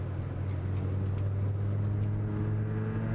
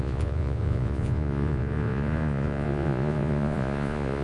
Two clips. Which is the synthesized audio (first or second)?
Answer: second